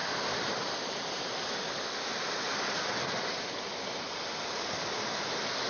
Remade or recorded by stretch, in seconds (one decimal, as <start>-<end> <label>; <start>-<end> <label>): 0.0-5.7 recorded